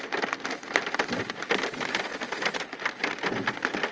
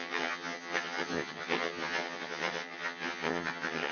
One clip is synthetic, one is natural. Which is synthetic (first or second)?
second